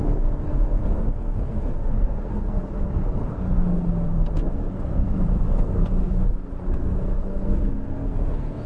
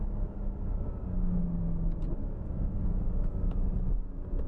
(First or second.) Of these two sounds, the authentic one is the second